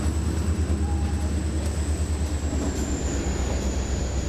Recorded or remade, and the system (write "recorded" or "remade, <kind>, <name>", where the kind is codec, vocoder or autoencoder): recorded